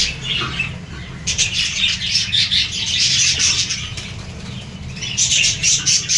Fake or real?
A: real